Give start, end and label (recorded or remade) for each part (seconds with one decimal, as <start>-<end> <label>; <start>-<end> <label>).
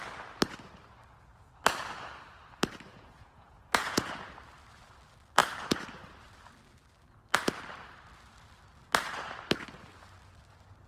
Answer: 0.0-2.9 recorded; 2.9-4.3 remade; 4.3-10.9 recorded